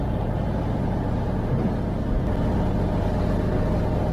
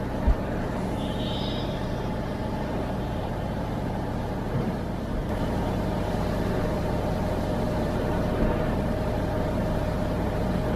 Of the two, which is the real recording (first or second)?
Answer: first